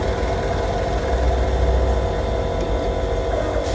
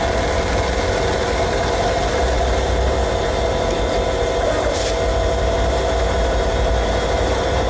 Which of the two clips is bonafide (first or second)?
first